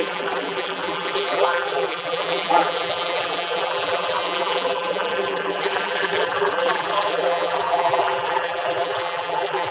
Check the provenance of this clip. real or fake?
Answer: fake